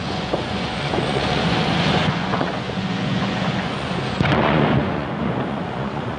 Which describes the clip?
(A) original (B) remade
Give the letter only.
B